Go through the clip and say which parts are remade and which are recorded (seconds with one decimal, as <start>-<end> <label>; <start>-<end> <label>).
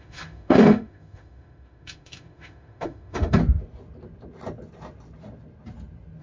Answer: 0.0-3.4 remade; 3.4-6.2 recorded